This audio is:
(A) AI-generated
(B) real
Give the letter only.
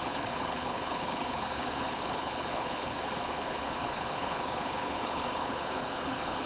A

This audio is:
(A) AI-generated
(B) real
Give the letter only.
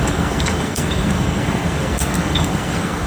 A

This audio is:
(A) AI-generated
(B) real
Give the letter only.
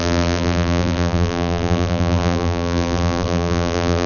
A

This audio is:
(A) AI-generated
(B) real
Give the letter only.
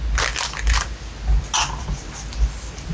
B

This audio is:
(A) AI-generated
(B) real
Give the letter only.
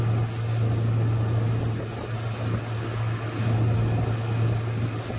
B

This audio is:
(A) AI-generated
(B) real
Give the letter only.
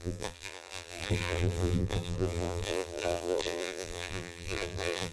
A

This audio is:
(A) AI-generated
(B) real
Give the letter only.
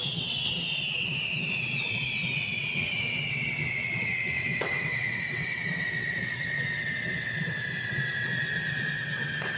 A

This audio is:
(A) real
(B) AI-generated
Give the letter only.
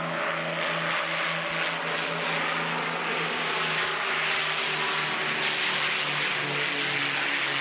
A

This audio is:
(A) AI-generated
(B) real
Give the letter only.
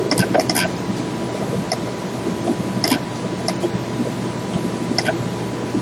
B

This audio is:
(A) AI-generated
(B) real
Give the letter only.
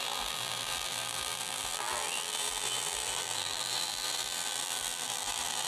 A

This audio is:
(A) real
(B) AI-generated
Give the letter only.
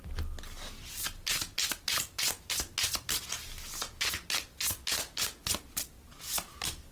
A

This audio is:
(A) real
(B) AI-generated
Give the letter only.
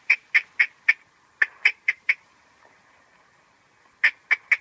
A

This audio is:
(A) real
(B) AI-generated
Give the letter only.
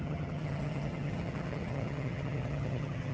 B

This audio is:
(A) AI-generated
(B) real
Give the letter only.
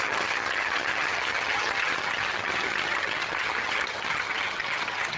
A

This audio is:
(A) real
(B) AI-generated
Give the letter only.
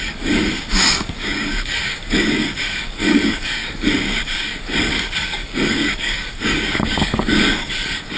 B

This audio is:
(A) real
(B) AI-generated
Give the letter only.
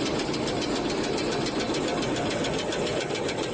A